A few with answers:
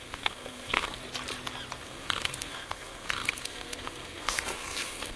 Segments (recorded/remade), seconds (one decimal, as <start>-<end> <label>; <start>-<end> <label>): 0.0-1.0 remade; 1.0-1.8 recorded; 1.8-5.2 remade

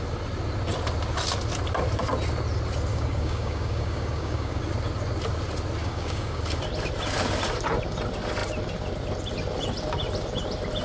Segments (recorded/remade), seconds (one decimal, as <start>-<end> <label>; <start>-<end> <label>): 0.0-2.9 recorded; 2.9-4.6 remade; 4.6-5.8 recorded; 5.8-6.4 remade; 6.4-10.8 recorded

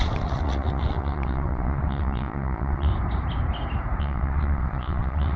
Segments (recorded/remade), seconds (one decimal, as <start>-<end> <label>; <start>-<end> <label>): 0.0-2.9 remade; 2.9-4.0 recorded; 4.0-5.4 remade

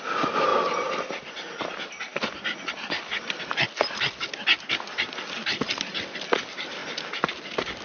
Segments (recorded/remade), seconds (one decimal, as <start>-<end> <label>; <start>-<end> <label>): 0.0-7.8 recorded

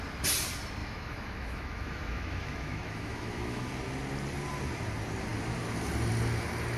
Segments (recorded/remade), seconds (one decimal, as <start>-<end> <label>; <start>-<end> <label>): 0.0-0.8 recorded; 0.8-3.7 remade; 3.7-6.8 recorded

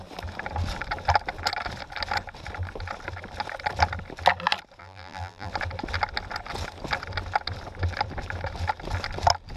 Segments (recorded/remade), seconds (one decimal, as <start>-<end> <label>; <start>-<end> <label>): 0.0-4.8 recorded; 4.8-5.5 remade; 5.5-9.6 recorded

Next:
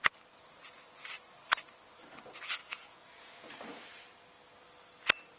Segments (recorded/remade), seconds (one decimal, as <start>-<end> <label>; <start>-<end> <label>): 0.0-2.6 recorded; 2.6-3.3 remade; 3.3-5.4 recorded